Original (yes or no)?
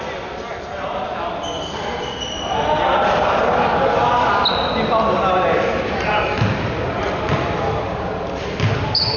yes